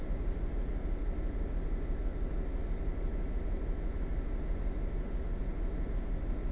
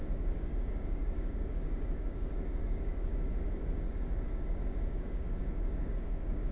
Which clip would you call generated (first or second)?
second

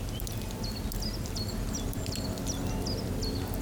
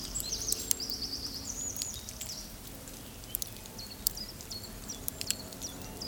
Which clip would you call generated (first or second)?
second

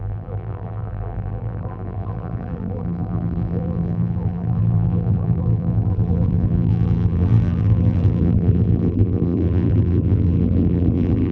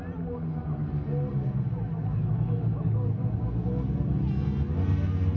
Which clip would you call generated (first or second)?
first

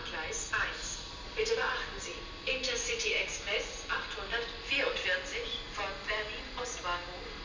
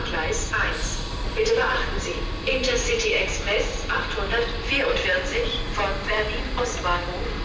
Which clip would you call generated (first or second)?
second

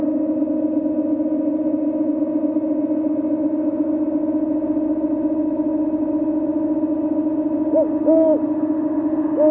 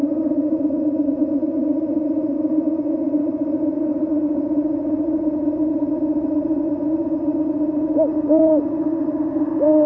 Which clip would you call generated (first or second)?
second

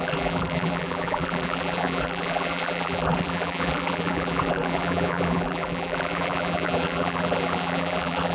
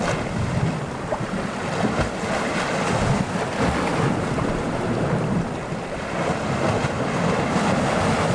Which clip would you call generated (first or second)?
first